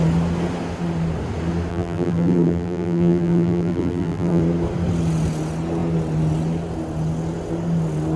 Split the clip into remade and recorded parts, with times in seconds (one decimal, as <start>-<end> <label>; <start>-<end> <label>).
0.0-1.7 recorded; 1.7-4.4 remade; 4.4-8.2 recorded